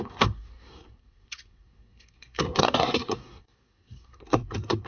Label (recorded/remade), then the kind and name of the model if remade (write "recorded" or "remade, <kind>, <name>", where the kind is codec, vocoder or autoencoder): remade, codec, SNAC